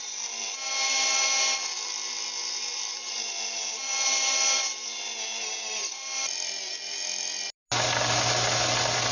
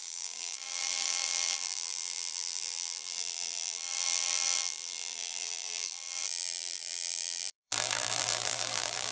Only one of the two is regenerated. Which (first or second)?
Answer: second